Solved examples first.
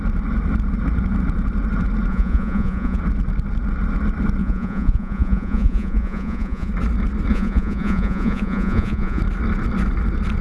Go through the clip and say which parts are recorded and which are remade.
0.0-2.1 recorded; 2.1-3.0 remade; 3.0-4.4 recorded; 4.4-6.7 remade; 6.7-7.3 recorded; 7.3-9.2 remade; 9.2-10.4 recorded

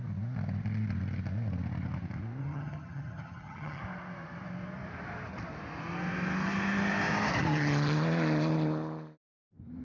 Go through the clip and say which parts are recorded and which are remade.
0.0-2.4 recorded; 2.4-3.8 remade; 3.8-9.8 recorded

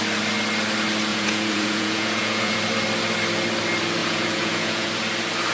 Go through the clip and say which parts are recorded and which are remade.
0.0-1.1 recorded; 1.1-2.6 remade; 2.6-4.0 recorded; 4.0-4.9 remade; 4.9-5.5 recorded

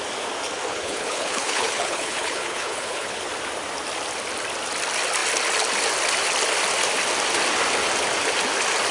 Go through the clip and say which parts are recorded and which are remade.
0.0-0.7 recorded; 0.7-3.2 remade; 3.2-8.9 recorded

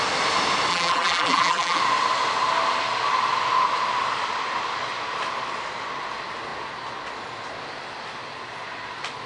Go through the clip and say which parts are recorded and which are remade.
0.0-0.7 recorded; 0.7-1.8 remade; 1.8-9.3 recorded